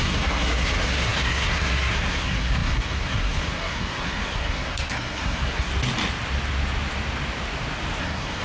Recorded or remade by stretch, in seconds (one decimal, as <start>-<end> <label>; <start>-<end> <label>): 0.0-5.7 remade; 5.7-8.0 recorded; 8.0-8.4 remade